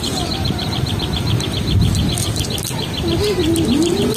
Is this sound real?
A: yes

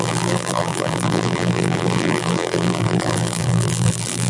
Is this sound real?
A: no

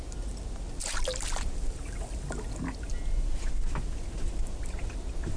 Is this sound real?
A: yes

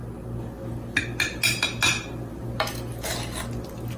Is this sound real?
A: yes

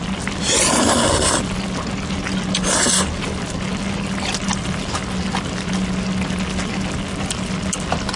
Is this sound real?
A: yes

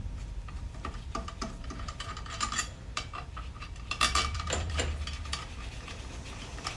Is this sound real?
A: no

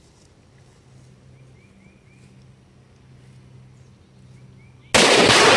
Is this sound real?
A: yes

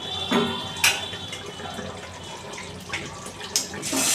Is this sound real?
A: yes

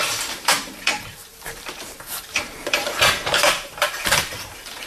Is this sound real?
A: no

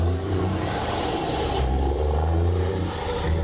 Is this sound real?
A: no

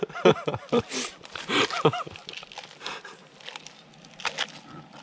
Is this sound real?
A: yes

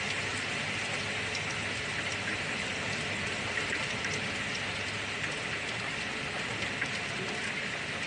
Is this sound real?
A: yes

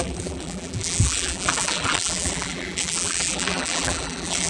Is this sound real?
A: no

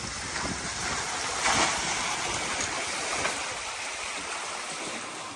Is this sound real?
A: yes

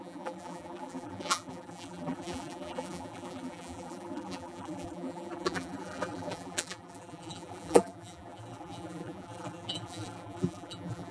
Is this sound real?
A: no